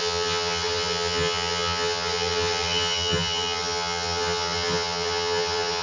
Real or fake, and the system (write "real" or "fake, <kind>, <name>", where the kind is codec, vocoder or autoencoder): fake, vocoder, HiFi-GAN